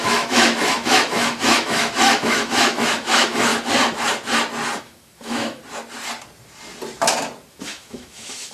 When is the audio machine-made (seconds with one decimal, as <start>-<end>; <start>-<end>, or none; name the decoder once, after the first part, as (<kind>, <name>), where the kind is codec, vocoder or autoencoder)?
0.0-3.5 (autoencoder, DAC-VAE); 4.8-5.6; 7.5-8.5